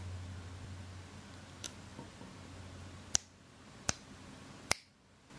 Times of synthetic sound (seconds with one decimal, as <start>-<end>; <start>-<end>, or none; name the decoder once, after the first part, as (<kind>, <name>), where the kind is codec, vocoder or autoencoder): none